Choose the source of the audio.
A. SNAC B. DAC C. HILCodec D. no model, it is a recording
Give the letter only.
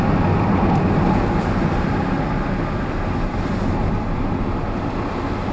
D